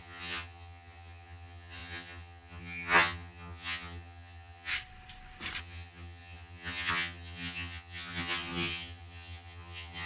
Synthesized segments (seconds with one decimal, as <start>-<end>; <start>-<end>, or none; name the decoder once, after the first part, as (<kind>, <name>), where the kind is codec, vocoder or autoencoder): 0.0-4.7 (vocoder, HiFi-GAN); 5.6-10.1